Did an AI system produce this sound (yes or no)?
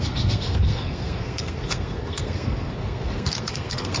yes